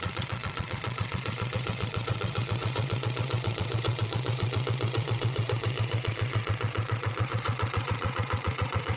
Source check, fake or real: fake